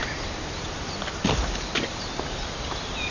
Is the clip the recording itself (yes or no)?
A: yes